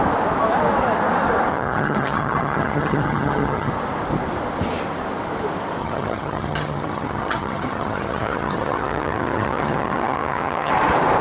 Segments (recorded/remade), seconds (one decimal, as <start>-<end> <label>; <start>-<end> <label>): 0.0-1.5 recorded; 1.5-3.7 remade; 3.7-5.8 recorded; 5.8-10.7 remade; 10.7-11.2 recorded

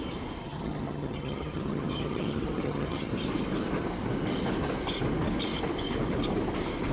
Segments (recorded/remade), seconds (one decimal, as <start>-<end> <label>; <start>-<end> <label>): 0.0-0.4 recorded; 0.4-3.1 remade; 3.1-6.9 recorded

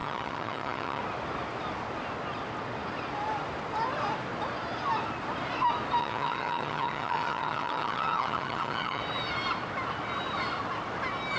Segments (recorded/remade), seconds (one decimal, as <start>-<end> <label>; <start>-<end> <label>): 0.0-1.0 remade; 1.0-6.0 recorded; 6.0-9.0 remade; 9.0-11.4 recorded